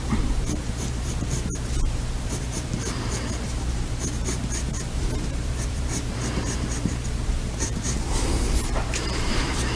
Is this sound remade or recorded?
remade